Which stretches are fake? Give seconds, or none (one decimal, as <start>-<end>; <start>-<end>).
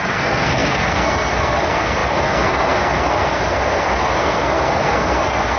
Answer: 0.0-5.6